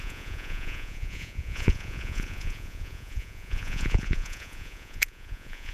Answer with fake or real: fake